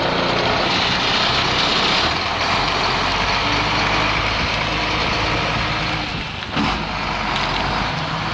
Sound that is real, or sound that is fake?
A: real